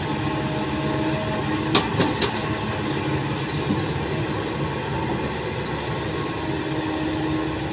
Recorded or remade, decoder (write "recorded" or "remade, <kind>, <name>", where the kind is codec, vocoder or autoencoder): recorded